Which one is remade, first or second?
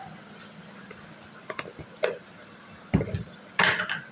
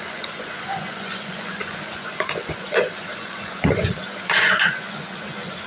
second